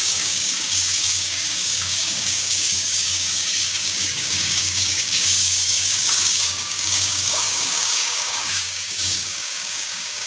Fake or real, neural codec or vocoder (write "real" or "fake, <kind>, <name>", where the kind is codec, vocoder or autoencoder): fake, codec, DAC